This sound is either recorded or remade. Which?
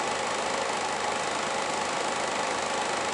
recorded